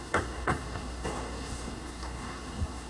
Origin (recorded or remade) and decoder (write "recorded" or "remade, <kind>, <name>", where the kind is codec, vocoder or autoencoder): remade, codec, SNAC